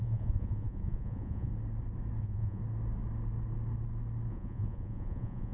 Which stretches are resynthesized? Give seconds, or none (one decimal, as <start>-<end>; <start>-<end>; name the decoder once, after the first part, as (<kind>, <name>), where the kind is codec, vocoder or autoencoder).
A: 0.0-1.5 (vocoder, Vocos); 2.2-2.6; 4.3-5.5